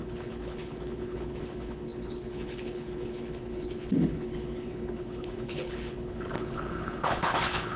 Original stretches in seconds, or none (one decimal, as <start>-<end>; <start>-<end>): none